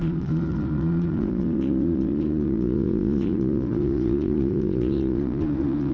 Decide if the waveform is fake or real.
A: fake